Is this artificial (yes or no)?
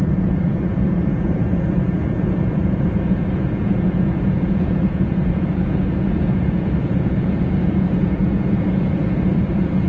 yes